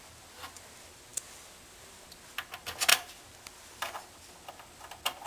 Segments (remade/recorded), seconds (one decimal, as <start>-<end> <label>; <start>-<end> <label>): 0.0-5.3 recorded